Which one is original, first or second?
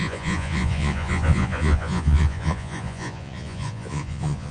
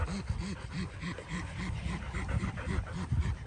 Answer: second